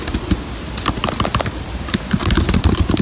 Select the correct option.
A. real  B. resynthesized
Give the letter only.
A